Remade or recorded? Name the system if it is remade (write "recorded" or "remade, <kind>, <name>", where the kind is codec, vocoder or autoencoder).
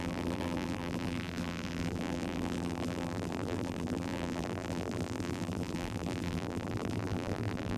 remade, vocoder, BigVGAN v2